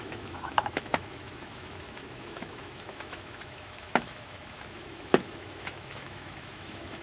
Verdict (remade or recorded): remade